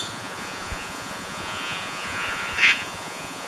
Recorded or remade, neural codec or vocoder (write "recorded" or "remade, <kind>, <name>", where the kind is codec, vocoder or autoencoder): remade, vocoder, Vocos